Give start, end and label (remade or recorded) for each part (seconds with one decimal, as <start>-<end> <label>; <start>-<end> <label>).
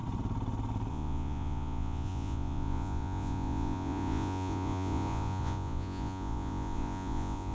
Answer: 0.0-0.9 recorded; 0.9-7.5 remade